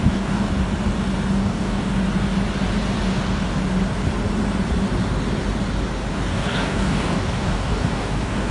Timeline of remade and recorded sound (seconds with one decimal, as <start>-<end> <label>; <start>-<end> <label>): 0.0-0.5 remade; 0.5-1.3 recorded; 1.3-1.9 remade; 1.9-6.1 recorded; 6.1-8.5 remade